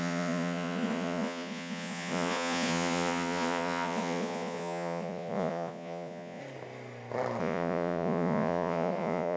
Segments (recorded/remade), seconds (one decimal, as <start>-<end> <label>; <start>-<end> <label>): 0.0-6.4 remade; 6.4-7.4 recorded; 7.4-9.4 remade